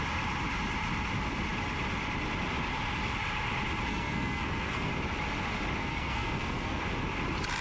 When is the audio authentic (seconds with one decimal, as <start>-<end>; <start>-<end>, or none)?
0.0-3.9; 4.9-5.8; 6.8-7.6